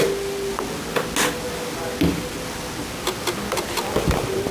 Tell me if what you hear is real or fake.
real